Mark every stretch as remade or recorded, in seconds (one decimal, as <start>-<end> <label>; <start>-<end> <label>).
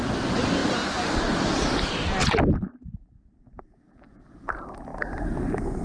0.0-5.8 recorded